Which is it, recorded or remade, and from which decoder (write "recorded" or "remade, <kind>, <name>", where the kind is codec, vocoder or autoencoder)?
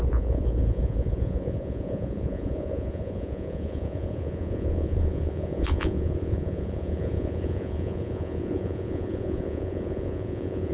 remade, vocoder, Vocos